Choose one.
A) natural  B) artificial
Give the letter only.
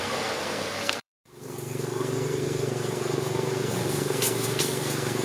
B